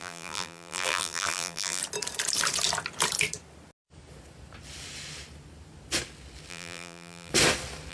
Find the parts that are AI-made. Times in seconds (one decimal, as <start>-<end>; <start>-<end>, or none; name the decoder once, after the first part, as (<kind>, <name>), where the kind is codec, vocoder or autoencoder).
0.0-1.8 (vocoder, BigVGAN v2); 6.5-7.3